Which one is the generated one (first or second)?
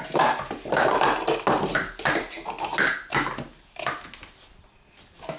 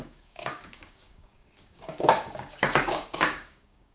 second